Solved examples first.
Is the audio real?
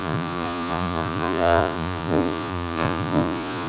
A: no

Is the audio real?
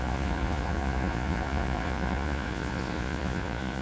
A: no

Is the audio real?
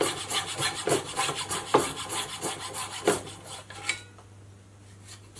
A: yes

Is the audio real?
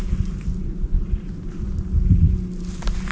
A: yes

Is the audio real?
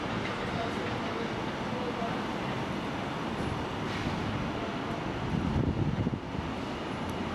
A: yes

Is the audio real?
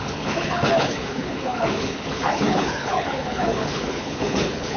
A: no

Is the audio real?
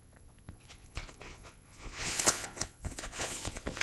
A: no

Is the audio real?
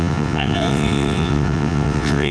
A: no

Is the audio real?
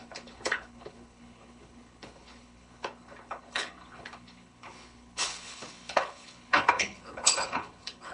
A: no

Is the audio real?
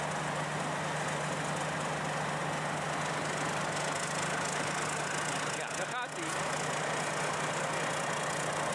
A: yes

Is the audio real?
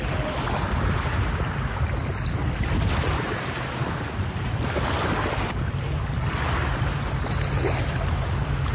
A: yes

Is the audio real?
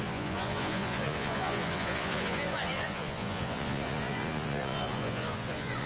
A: no